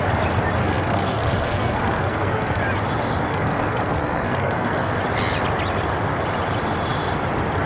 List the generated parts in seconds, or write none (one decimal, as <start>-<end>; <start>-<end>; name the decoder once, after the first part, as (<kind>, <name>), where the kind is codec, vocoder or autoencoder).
0.6-2.6 (codec, SNAC); 3.3-4.9